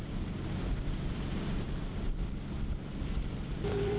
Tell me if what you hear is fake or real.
fake